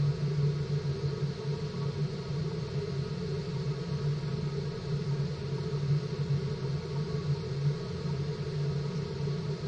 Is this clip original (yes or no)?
yes